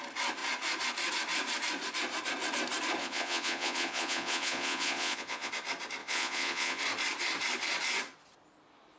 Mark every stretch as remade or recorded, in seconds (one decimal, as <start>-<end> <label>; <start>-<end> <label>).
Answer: 0.0-3.0 recorded; 3.0-5.5 remade; 5.5-6.0 recorded; 6.0-6.8 remade; 6.8-9.0 recorded